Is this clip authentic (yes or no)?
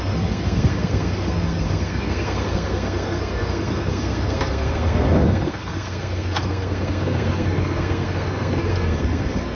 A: no